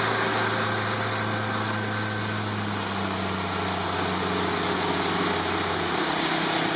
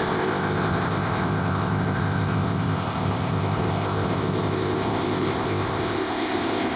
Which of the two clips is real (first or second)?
first